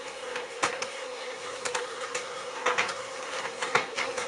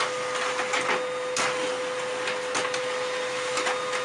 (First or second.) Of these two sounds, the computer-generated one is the first